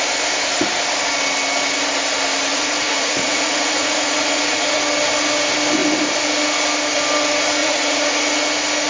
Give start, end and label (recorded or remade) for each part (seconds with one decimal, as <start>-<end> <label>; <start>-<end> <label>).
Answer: 0.0-2.5 recorded; 2.5-4.8 remade; 4.8-7.6 recorded; 7.6-8.2 remade; 8.2-8.9 recorded